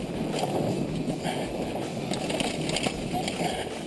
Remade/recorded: recorded